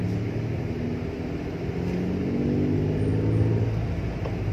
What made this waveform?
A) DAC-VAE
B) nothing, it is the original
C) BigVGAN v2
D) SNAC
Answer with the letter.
B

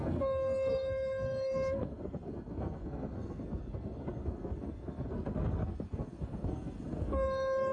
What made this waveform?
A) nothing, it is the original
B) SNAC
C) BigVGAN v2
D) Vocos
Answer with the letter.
B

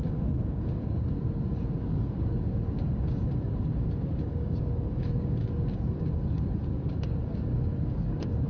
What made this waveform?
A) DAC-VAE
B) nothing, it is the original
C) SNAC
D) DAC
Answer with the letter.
D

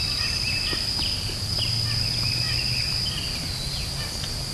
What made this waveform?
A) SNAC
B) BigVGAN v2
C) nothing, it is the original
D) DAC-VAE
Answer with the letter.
C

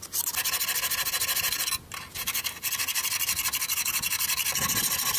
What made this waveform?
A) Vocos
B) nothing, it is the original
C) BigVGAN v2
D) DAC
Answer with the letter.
B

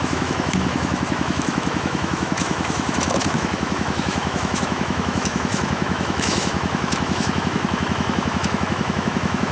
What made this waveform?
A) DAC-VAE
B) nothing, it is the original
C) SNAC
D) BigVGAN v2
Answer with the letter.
A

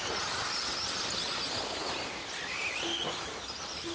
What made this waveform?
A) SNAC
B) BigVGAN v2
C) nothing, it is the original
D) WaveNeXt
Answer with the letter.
C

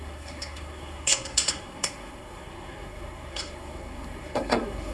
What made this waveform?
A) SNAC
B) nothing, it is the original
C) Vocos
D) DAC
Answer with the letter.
A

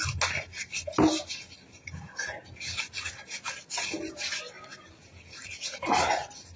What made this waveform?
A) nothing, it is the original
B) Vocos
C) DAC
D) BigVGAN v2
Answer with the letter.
A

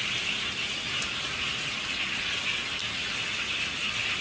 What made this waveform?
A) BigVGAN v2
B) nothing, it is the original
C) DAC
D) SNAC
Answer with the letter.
B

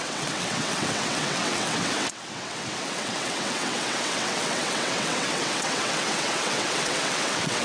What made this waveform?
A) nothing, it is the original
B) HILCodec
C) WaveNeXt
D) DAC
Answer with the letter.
C